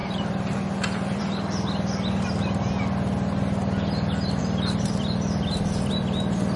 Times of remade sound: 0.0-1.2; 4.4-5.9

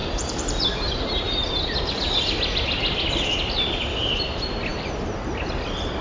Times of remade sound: 0.0-3.5

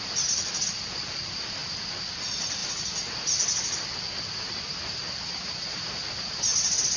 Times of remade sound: none

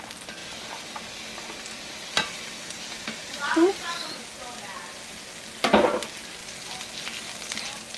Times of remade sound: 3.2-3.7

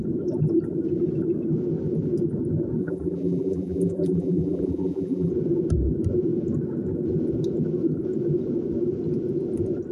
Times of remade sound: 2.8-5.3

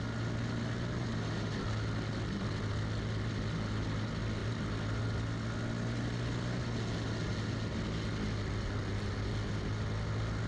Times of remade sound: none

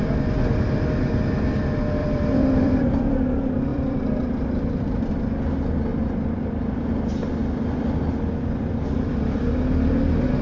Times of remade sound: 2.0-3.0; 3.7-5.1; 5.9-6.9

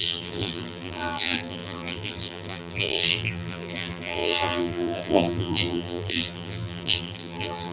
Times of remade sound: 0.0-7.7